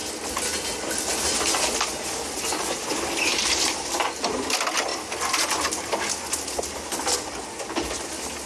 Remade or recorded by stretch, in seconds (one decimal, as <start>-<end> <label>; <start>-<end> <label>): 0.0-3.3 recorded; 3.3-4.4 remade; 4.4-8.5 recorded